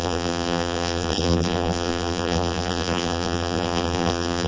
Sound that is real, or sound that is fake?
fake